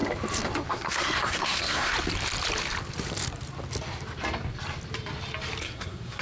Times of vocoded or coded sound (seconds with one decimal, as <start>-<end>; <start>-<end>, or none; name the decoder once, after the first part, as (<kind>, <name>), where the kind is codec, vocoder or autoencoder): 0.7-1.9 (codec, SNAC); 5.6-6.2